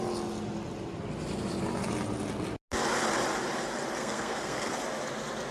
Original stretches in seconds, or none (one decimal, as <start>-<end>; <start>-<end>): 0.0-4.0; 4.7-5.5